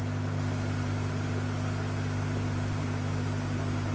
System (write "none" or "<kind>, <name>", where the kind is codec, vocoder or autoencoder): none